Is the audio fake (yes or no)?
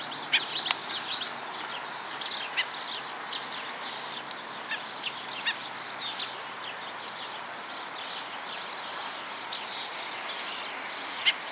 no